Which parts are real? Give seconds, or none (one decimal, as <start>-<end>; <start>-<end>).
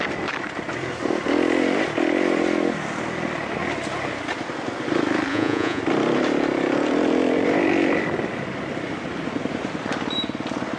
0.0-5.3; 5.8-10.8